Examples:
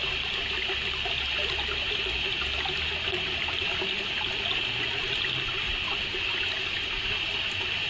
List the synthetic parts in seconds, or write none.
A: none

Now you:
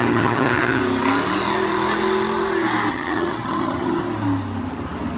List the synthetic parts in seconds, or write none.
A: 0.0-0.8 (vocoder, HiFi-GAN); 2.9-4.0

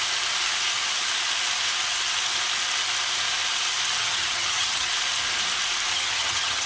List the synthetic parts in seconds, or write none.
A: 4.0-4.9 (vocoder, HiFi-GAN); 5.9-6.7

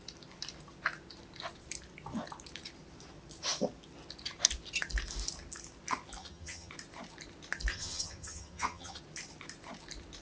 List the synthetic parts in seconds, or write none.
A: 6.2-6.7 (vocoder, HiFi-GAN); 7.7-9.0

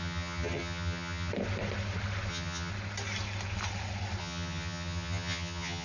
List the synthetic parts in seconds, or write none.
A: 0.0-1.3 (vocoder, HiFi-GAN); 2.3-2.7; 4.2-5.8

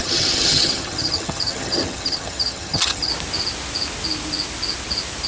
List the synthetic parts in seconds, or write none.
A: 0.0-3.1 (vocoder, HiFi-GAN)